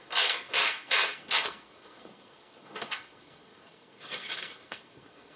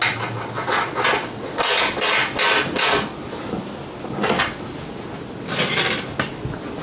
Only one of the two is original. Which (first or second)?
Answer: second